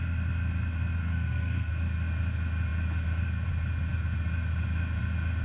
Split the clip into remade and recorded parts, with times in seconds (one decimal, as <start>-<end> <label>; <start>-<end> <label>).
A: 0.0-1.0 recorded; 1.0-1.7 remade; 1.7-5.4 recorded

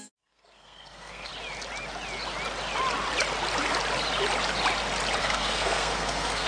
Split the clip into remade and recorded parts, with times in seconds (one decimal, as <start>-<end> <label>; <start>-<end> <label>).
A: 0.0-1.3 remade; 1.3-5.2 recorded; 5.2-6.5 remade

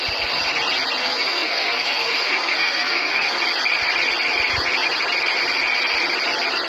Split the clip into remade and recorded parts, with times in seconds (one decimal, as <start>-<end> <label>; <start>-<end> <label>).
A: 0.0-1.0 recorded; 1.0-3.4 remade; 3.4-6.7 recorded

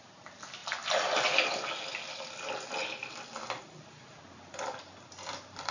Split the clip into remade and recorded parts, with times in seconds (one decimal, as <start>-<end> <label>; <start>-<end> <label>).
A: 0.0-5.7 recorded

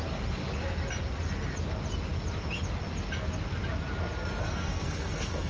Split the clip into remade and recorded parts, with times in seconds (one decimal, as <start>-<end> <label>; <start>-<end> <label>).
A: 0.0-4.4 recorded; 4.4-5.5 remade